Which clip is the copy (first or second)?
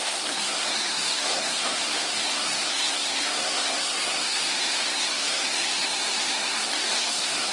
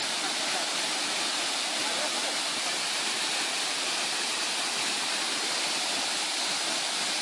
first